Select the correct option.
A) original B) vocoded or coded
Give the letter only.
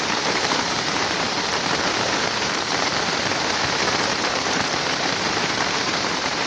B